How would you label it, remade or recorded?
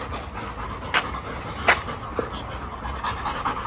recorded